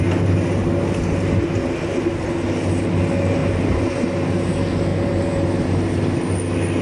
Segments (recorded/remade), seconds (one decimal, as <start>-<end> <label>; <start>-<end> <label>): 0.0-3.4 recorded; 3.4-4.3 remade; 4.3-4.9 recorded; 4.9-6.3 remade; 6.3-6.8 recorded